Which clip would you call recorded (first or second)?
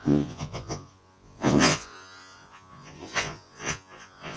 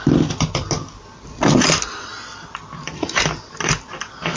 second